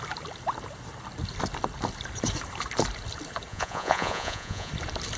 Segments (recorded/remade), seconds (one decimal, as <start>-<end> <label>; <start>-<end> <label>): 0.0-3.5 recorded; 3.5-4.7 remade; 4.7-5.2 recorded